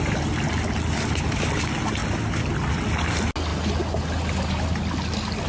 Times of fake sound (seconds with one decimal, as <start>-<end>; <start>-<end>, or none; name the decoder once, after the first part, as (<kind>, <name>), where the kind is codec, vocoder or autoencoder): none